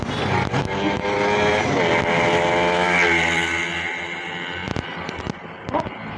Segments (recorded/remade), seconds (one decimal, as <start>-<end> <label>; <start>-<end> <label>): 0.0-4.6 recorded; 4.6-5.2 remade; 5.2-6.2 recorded